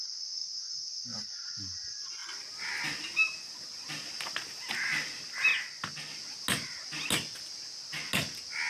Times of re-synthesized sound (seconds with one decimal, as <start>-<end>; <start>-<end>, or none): none